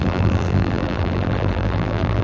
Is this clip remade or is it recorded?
remade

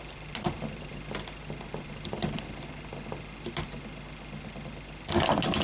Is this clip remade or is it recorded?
recorded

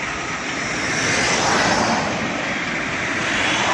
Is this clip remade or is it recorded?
recorded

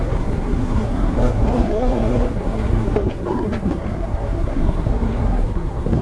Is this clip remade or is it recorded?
remade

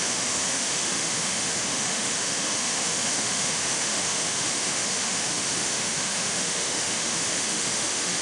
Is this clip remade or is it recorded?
remade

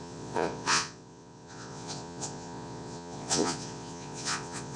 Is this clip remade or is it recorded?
remade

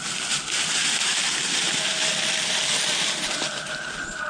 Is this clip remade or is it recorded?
recorded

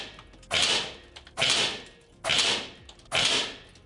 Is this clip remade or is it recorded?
recorded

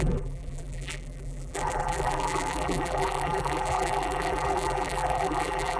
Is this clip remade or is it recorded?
remade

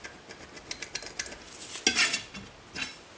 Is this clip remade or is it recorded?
recorded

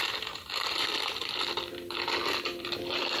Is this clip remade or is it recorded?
remade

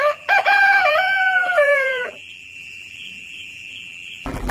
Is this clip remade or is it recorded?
remade